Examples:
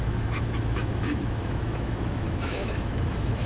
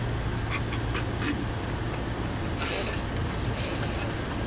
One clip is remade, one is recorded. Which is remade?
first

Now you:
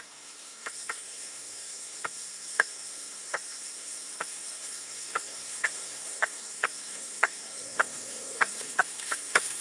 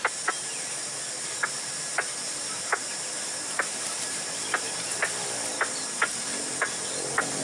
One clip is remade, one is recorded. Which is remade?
first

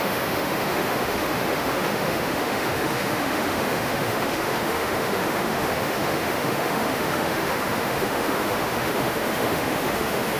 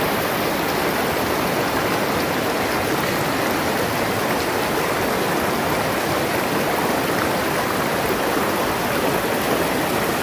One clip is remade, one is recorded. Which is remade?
first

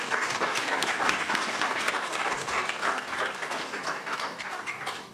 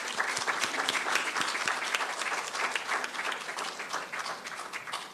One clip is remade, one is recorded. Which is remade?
first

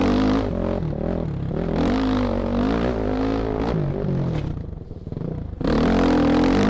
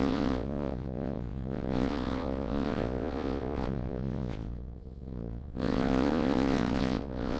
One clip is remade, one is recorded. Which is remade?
second